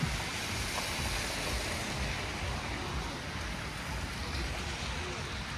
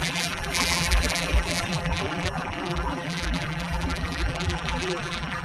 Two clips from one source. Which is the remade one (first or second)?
second